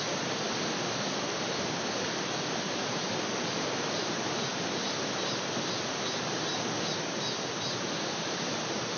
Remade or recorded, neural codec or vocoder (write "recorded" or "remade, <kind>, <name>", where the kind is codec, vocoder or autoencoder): recorded